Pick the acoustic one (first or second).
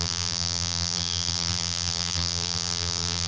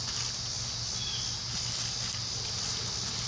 second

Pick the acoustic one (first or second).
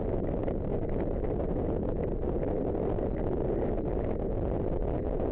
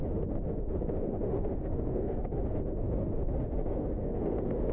first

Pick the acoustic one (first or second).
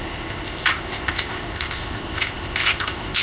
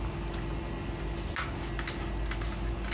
second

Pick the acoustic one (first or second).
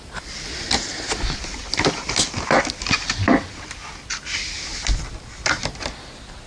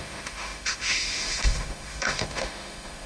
first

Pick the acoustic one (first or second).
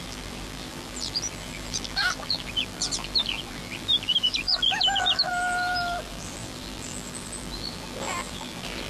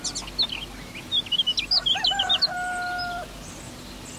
second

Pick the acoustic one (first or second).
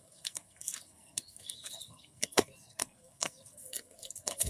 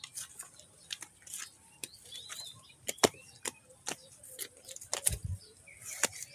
second